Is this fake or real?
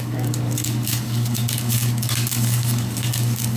fake